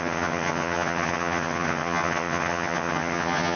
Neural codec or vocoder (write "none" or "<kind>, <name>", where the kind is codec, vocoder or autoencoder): vocoder, HiFi-GAN